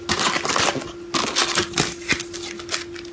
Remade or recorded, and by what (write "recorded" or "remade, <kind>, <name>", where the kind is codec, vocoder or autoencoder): recorded